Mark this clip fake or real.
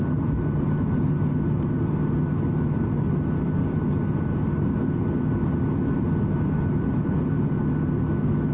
real